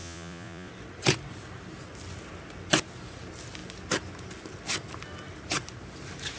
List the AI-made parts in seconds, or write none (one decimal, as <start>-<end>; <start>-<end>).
0.0-0.7